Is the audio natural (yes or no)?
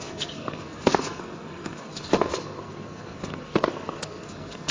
no